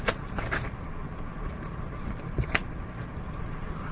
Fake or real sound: fake